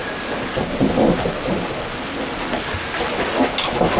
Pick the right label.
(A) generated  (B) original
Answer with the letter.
B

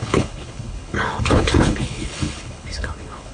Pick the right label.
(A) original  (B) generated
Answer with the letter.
B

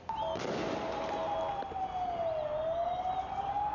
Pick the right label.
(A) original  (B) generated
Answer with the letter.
A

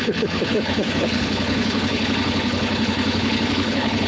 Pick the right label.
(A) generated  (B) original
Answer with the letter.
A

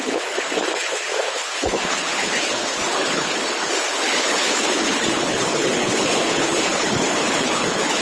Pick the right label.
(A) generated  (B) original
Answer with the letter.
A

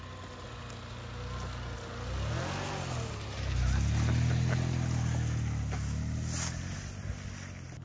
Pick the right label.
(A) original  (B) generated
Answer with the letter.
A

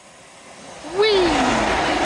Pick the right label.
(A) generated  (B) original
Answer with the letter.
B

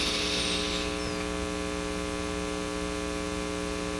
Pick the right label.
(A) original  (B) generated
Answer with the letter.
A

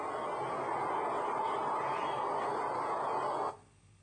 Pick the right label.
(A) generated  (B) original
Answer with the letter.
B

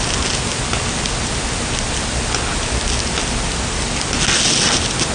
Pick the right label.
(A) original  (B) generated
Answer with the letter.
A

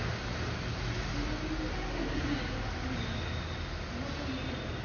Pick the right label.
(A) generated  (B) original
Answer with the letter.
B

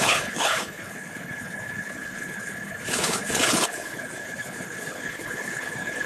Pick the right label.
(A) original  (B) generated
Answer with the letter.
B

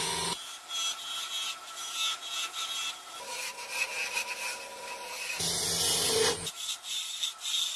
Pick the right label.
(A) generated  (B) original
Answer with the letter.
B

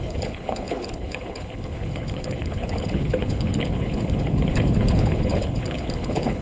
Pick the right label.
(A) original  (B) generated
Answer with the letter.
B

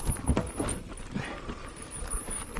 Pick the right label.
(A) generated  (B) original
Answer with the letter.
B